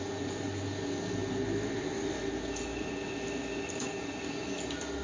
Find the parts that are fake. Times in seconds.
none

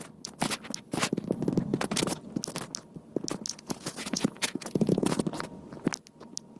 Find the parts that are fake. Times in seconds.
1.7-2.2; 3.5-5.2

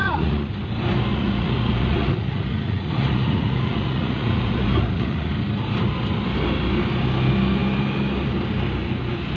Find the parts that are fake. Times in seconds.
0.0-0.5; 1.1-5.3

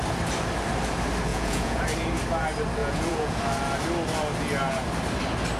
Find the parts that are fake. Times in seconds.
1.3-1.8; 2.8-3.4

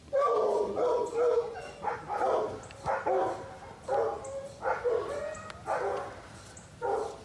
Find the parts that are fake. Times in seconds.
0.0-1.1; 1.5-2.0